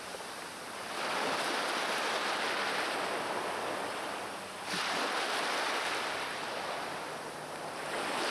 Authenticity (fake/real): real